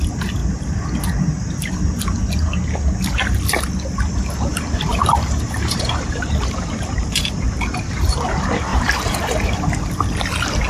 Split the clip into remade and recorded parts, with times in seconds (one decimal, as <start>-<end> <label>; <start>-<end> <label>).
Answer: 0.0-4.5 recorded; 4.5-8.1 remade; 8.1-8.7 recorded; 8.7-9.6 remade; 9.6-10.7 recorded

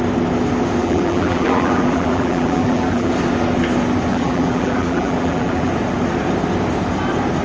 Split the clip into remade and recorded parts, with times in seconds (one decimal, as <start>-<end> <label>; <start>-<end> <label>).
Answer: 0.0-0.8 recorded; 0.8-3.1 remade; 3.1-4.1 recorded; 4.1-5.7 remade; 5.7-7.4 recorded

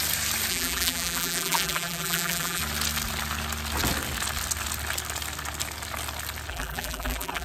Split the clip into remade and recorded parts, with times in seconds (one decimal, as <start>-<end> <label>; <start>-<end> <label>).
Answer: 0.0-0.5 recorded; 0.5-2.6 remade; 2.6-6.5 recorded; 6.5-7.4 remade